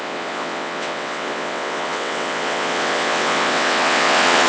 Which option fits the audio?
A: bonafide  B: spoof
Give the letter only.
B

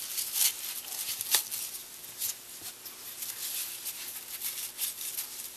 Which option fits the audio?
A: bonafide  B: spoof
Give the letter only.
A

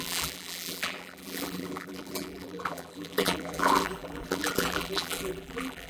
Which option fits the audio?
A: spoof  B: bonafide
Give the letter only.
A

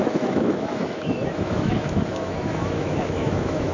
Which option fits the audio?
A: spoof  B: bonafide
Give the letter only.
A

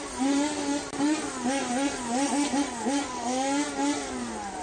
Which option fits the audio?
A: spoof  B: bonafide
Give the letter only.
B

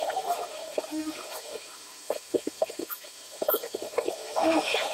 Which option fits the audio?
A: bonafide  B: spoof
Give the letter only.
B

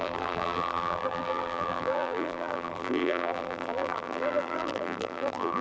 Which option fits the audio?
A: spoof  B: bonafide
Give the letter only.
A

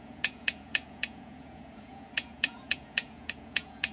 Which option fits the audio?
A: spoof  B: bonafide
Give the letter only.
A